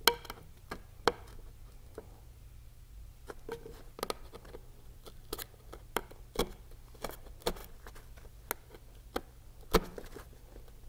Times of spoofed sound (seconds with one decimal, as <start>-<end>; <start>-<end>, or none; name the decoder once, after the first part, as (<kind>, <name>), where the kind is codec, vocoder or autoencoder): none